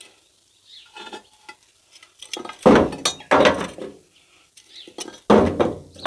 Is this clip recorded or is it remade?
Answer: recorded